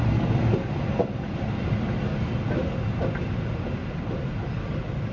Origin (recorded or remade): recorded